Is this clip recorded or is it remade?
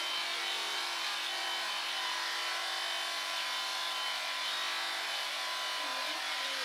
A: recorded